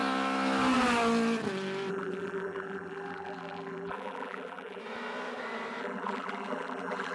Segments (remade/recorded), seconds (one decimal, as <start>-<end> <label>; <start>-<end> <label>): 0.0-1.9 recorded; 1.9-4.8 remade; 4.8-5.8 recorded; 5.8-7.1 remade